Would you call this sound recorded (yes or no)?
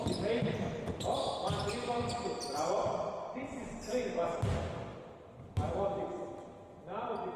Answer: yes